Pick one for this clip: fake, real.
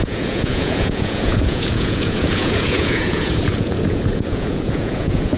fake